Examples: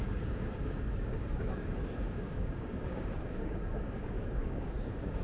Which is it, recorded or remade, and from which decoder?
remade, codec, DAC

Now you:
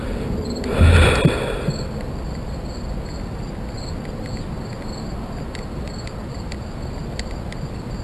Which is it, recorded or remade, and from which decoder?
recorded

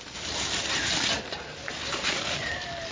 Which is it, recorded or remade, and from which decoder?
recorded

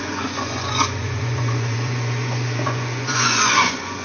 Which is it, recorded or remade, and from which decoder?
remade, vocoder, Vocos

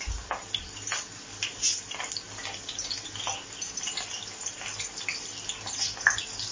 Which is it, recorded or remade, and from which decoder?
recorded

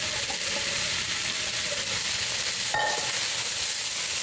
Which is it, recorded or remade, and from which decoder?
recorded